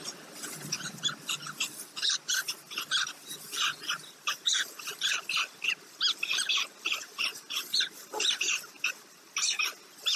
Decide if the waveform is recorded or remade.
recorded